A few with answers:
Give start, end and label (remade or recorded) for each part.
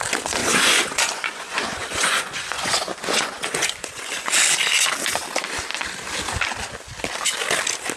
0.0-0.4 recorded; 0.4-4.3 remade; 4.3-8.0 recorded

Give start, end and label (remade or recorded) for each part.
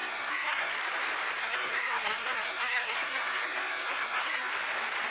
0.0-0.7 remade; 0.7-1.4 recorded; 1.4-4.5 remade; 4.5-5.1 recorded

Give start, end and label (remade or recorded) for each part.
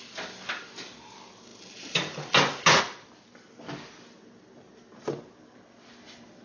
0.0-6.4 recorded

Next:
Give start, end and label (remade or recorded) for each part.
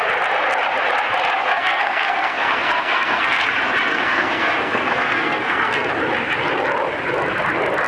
0.0-1.5 recorded; 1.5-3.5 remade; 3.5-3.9 recorded; 3.9-5.9 remade; 5.9-7.9 recorded